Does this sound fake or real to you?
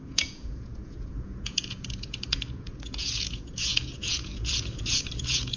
fake